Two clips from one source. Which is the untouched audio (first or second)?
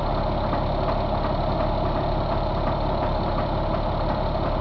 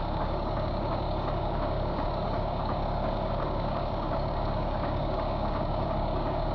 first